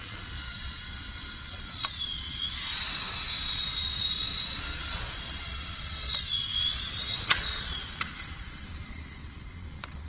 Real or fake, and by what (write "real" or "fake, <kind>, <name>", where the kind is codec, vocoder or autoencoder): fake, vocoder, Vocos